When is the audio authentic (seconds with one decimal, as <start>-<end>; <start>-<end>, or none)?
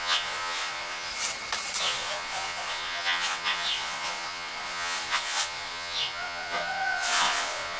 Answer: 1.1-1.8